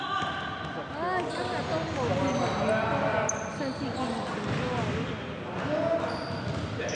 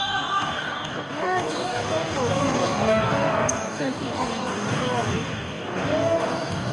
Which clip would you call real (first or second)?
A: first